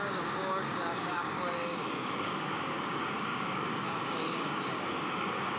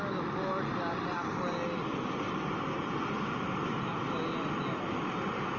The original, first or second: second